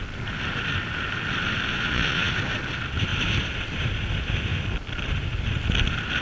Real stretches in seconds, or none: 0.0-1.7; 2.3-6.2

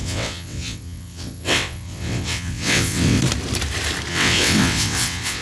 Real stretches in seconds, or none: 3.2-4.1

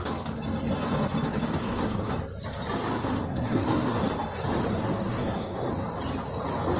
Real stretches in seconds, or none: 0.0-1.6; 2.1-3.0; 4.0-4.7; 5.7-6.8

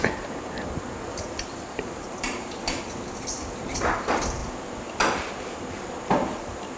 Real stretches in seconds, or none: 0.0-6.8